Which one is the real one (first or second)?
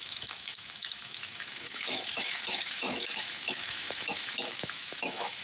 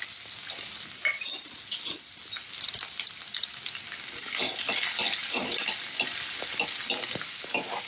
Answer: second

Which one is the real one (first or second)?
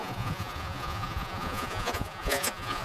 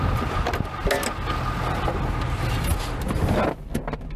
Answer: second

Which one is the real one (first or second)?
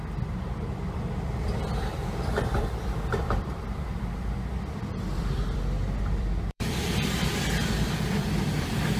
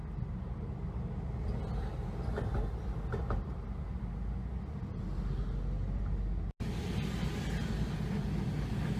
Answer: second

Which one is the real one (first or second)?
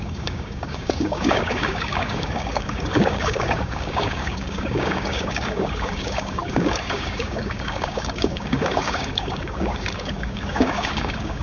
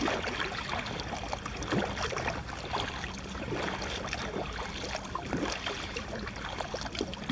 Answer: second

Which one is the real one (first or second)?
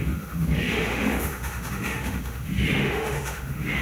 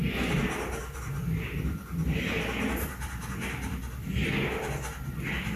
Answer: second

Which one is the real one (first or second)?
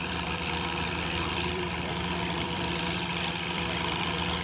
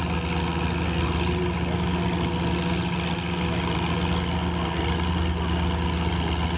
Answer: second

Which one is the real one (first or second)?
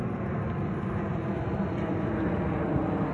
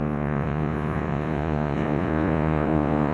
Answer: first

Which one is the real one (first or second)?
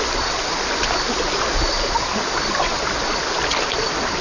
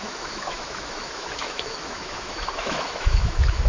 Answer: first